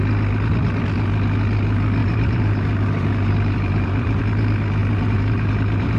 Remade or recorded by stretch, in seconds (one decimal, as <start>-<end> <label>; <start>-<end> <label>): 0.0-2.0 recorded; 2.0-4.2 remade; 4.2-4.8 recorded; 4.8-6.0 remade